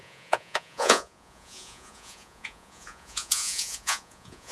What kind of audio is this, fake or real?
fake